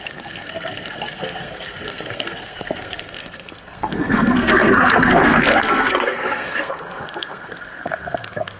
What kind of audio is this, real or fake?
fake